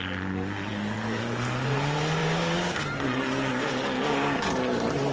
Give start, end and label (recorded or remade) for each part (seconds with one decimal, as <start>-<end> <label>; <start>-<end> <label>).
0.0-2.2 recorded; 2.2-2.8 remade; 2.8-3.5 recorded; 3.5-4.4 remade; 4.4-5.1 recorded